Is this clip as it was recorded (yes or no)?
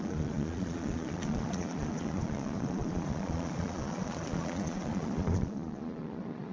no